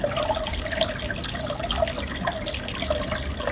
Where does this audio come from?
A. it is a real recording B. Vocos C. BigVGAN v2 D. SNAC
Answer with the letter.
A